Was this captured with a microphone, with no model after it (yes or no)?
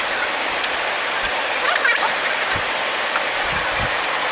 yes